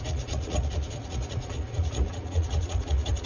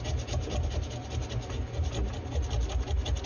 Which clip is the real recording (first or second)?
second